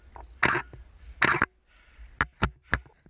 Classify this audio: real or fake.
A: real